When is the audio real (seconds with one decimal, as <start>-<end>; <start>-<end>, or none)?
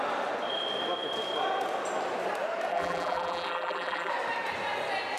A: 0.0-2.7; 4.1-5.2